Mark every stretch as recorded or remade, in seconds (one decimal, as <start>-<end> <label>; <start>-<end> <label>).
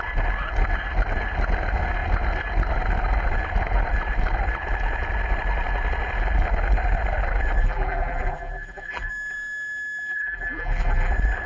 0.0-7.6 recorded; 7.6-9.1 remade; 9.1-10.1 recorded; 10.1-11.1 remade; 11.1-11.5 recorded